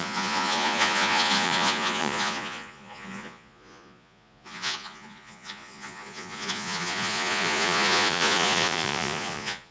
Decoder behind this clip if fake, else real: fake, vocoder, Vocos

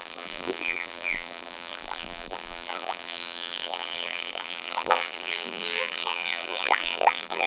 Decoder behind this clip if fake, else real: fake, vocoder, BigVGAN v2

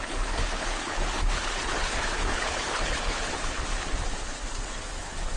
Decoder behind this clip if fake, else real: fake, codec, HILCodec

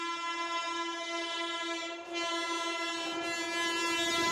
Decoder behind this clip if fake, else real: real